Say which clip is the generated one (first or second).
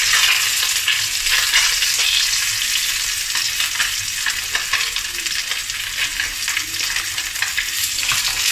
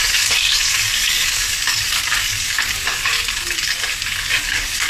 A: second